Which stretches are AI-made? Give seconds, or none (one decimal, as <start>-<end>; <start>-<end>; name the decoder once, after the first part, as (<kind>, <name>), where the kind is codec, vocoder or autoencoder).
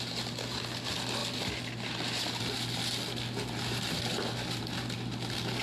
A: none